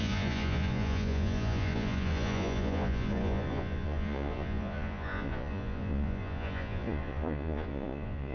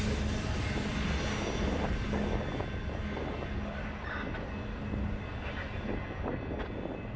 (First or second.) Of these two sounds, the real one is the second